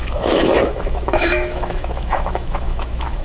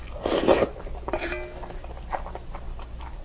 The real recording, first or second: second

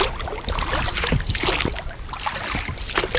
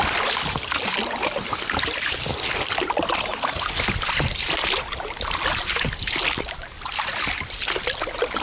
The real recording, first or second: first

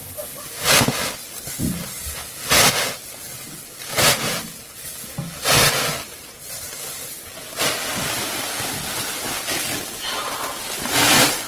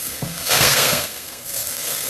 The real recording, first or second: first